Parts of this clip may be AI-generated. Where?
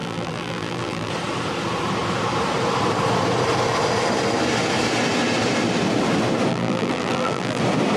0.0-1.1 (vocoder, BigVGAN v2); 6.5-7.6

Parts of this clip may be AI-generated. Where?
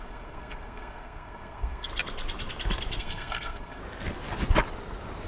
0.0-1.9 (codec, SNAC); 3.0-3.8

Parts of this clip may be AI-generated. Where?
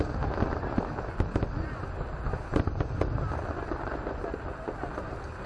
none